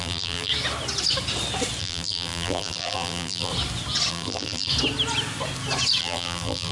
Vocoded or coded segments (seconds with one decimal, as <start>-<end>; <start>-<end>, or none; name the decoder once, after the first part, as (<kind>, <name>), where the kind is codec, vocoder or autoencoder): 0.0-0.5 (vocoder, BigVGAN v2); 1.8-3.5; 4.1-4.7; 6.0-6.7